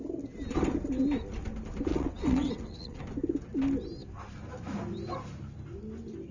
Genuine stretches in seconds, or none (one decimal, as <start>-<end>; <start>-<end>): 0.0-1.9; 3.0-6.3